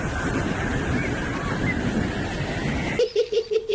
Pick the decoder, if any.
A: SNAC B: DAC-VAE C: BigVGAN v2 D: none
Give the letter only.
D